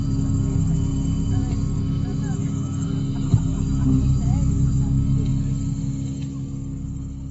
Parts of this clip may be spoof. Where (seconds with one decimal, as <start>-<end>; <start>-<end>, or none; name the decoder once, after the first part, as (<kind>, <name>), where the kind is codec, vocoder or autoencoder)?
none